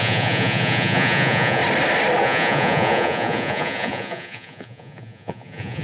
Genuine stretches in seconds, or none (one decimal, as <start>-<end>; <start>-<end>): 1.6-2.2